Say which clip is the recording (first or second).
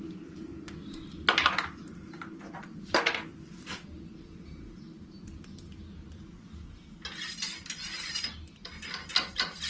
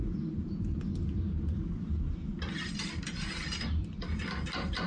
first